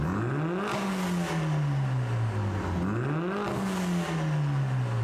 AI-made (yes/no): no